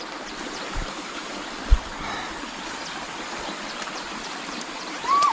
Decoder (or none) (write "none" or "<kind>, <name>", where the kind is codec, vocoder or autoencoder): none